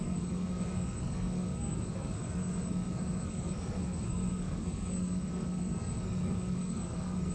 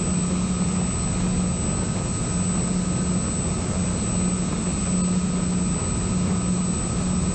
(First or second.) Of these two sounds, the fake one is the first